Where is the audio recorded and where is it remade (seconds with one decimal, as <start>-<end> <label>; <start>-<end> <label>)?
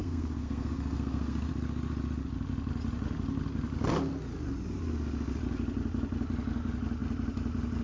0.0-1.5 remade; 1.5-7.8 recorded